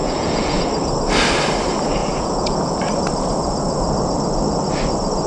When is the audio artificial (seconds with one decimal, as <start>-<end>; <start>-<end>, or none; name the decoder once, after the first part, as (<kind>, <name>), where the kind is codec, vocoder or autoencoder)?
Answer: 0.0-0.6 (vocoder, Vocos); 2.0-2.8

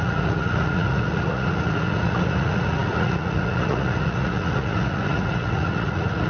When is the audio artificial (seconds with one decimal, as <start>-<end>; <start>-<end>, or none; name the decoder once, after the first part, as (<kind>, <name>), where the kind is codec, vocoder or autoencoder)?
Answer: 0.0-6.3 (vocoder, Vocos)